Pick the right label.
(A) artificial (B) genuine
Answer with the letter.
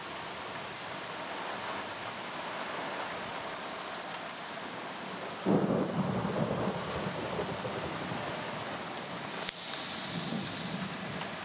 B